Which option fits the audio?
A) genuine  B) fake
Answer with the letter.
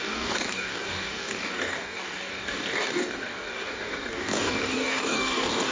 B